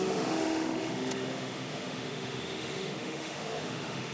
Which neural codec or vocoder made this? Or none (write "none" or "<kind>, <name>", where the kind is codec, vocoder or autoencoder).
autoencoder, DAC-VAE